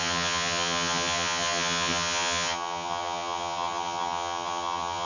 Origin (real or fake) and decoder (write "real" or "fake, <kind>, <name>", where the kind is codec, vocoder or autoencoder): fake, vocoder, HiFi-GAN